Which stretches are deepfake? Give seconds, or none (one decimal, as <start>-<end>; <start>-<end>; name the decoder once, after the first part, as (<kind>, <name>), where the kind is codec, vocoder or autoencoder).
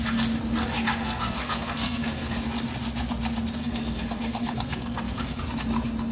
1.0-2.4 (codec, SNAC); 3.6-5.4